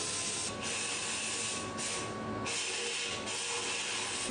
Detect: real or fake real